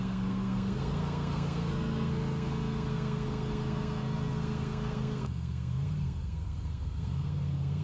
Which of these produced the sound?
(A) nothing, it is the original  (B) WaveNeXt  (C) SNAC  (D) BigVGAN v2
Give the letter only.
C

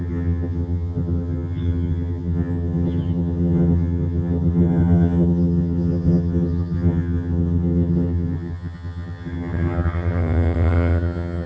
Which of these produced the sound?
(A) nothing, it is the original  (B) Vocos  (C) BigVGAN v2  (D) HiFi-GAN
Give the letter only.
D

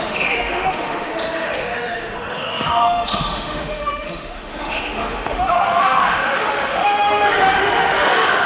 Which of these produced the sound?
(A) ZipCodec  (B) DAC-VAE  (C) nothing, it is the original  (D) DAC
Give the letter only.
B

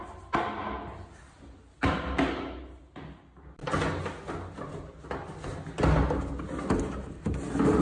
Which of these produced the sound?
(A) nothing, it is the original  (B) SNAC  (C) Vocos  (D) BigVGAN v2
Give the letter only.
A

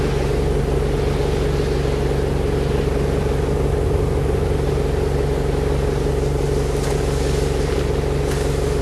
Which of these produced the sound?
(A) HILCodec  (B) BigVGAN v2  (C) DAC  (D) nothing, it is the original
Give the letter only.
D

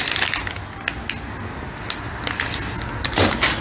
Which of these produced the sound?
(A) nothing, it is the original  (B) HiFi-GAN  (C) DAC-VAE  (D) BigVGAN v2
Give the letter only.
A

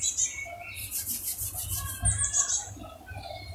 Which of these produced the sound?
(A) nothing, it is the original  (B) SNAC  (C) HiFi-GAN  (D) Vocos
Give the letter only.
A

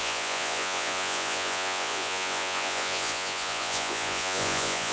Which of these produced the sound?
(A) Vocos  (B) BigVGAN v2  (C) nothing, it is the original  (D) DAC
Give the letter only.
A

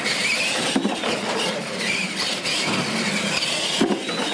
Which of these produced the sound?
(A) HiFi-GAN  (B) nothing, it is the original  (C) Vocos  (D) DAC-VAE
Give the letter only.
B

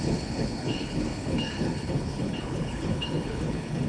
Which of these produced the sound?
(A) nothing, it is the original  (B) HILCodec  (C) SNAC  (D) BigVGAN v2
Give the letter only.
B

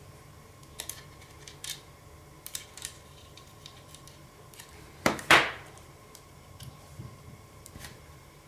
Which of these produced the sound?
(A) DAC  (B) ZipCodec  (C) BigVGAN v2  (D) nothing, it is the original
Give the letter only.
C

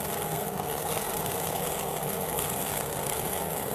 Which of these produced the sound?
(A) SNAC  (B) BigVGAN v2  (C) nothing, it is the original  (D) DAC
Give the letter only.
A